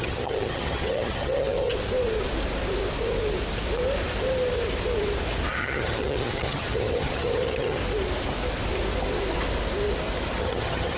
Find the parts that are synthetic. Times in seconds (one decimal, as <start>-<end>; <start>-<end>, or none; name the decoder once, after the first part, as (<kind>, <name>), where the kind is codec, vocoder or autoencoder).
0.0-1.7 (vocoder, HiFi-GAN); 5.5-7.8; 10.4-11.0